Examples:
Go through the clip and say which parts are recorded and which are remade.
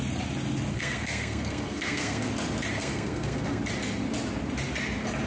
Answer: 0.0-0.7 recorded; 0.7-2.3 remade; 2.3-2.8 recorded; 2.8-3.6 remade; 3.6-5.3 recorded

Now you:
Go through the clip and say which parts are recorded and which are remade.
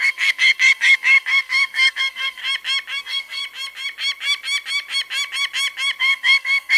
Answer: 0.0-2.4 remade; 2.4-3.0 recorded; 3.0-3.4 remade; 3.4-6.0 recorded; 6.0-6.8 remade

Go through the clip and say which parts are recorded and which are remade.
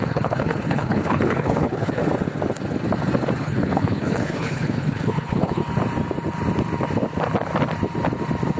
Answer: 0.0-2.0 remade; 2.0-3.4 recorded; 3.4-5.6 remade; 5.6-8.6 recorded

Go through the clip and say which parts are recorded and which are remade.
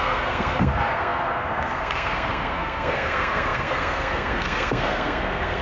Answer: 0.0-5.6 remade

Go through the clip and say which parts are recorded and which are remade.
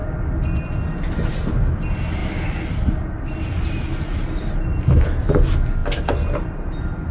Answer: 0.0-7.1 recorded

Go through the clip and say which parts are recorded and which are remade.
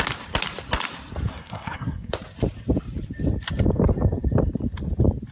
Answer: 0.0-1.3 recorded; 1.3-2.1 remade; 2.1-5.3 recorded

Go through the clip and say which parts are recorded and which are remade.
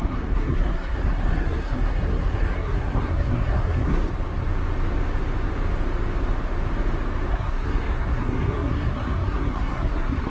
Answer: 0.0-4.0 remade; 4.0-7.3 recorded; 7.3-10.3 remade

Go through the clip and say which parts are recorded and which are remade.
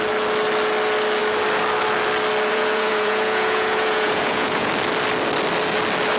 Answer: 0.0-2.5 recorded; 2.5-4.7 remade; 4.7-6.2 recorded